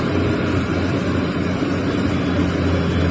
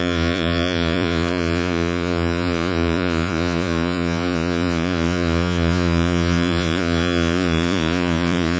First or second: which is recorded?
first